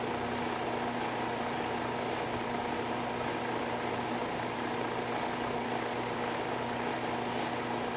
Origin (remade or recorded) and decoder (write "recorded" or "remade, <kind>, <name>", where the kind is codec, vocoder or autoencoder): recorded